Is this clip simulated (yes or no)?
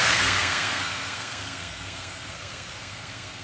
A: yes